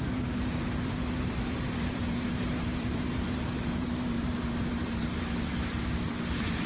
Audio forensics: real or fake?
fake